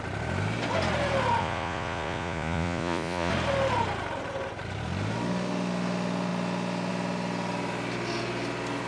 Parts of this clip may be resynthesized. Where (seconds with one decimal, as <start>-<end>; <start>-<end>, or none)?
1.4-3.3